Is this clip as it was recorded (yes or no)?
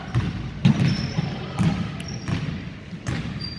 yes